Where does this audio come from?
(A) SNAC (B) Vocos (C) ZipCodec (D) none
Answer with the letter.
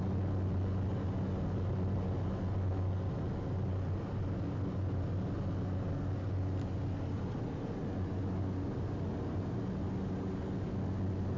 D